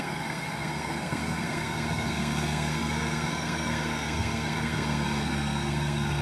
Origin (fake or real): fake